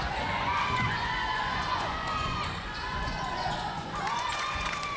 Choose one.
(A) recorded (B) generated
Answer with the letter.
B